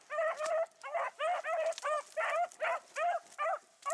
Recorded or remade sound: recorded